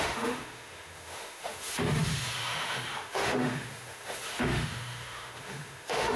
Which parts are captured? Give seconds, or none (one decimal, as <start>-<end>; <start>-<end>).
none